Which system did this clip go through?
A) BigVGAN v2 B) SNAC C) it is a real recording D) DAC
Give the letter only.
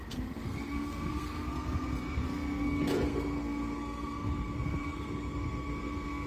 B